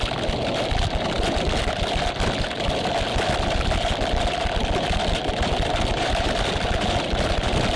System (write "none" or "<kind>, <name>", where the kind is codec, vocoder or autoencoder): vocoder, BigVGAN v2